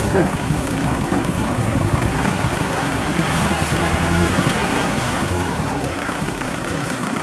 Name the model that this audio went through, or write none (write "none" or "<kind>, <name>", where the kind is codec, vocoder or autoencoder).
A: codec, SNAC